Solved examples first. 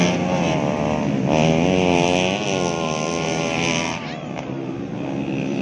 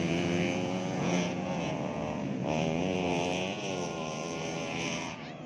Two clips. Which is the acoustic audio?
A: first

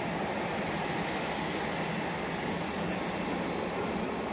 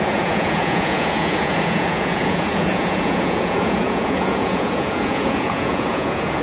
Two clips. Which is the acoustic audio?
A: first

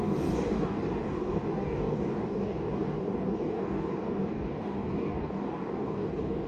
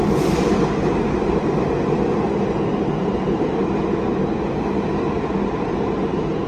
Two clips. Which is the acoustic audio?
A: second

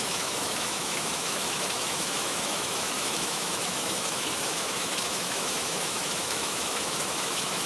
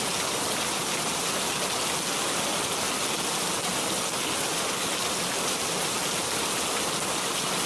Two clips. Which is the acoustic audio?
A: second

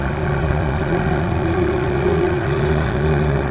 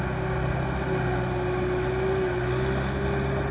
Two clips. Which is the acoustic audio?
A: second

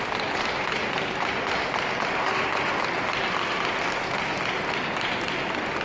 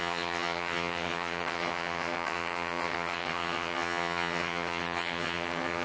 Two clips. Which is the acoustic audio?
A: first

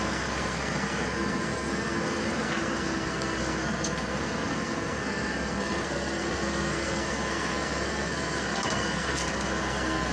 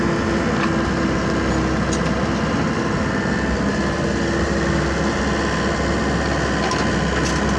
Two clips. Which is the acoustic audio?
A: second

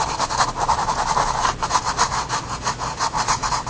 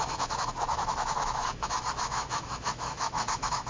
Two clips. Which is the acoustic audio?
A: first